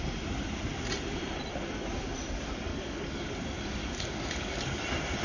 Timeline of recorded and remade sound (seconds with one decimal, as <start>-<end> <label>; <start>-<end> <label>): 0.0-2.7 recorded; 2.7-3.3 remade; 3.3-3.8 recorded; 3.8-4.8 remade; 4.8-5.2 recorded